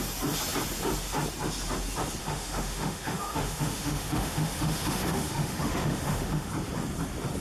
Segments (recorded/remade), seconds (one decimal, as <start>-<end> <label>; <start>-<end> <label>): 0.0-2.2 recorded; 2.2-6.5 remade; 6.5-7.4 recorded